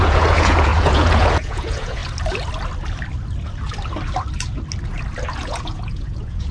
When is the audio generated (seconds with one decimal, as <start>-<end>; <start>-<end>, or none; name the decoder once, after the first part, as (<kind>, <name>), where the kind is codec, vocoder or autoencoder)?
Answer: 0.0-2.0 (vocoder, Vocos); 5.3-6.5